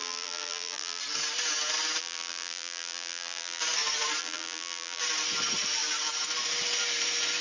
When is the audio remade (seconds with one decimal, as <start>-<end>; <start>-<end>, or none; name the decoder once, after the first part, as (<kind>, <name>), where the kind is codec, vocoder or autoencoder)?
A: 0.0-1.0 (vocoder, BigVGAN v2); 2.0-3.6; 4.2-5.0